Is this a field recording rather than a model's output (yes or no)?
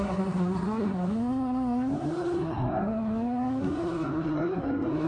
no